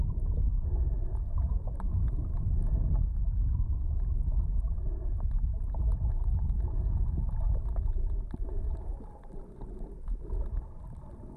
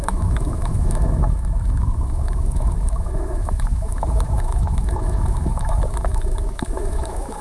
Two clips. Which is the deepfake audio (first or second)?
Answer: second